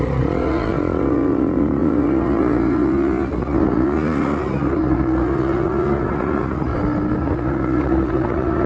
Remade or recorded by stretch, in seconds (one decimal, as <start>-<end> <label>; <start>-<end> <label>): 0.0-6.7 remade; 6.7-7.2 recorded; 7.2-8.7 remade